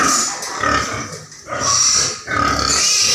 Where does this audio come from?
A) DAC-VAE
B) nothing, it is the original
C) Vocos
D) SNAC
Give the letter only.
B